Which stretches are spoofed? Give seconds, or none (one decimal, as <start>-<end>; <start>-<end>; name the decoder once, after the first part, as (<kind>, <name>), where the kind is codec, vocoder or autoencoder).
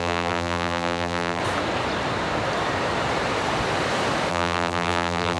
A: 0.0-1.4 (vocoder, BigVGAN v2); 4.3-5.4